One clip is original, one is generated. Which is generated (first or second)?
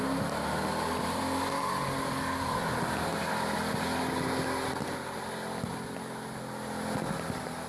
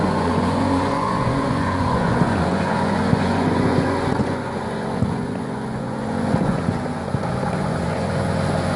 second